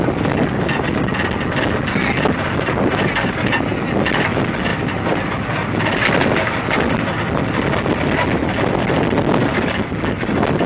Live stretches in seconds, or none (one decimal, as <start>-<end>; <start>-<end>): 0.0-4.7; 5.3-10.7